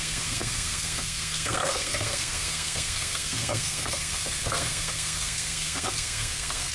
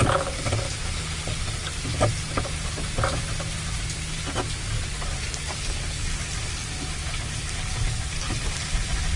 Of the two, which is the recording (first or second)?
second